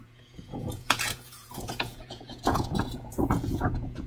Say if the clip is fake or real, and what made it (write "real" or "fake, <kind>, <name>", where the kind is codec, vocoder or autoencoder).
fake, vocoder, Vocos